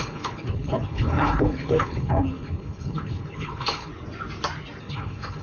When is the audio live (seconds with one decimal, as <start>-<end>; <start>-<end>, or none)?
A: 3.9-4.8